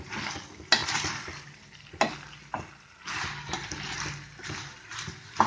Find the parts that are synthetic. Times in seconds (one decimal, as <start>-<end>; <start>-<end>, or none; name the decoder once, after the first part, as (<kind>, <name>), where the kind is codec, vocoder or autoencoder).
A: none